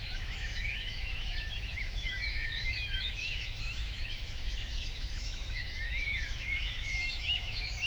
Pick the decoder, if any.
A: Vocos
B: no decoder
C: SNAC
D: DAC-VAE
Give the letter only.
D